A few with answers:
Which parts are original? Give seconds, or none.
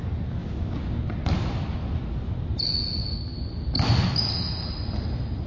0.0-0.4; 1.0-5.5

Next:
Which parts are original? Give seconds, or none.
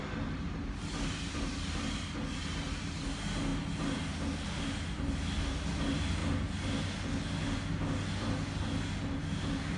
0.0-9.8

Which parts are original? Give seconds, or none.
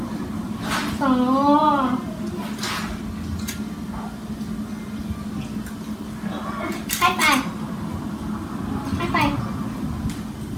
0.0-10.6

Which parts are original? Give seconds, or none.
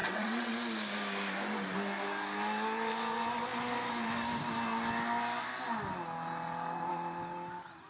0.5-7.9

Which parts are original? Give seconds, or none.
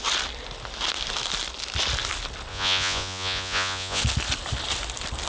0.0-2.5; 4.0-5.3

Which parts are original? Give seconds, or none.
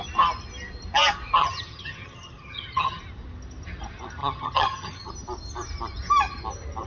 0.0-1.4; 3.0-4.2; 5.1-6.9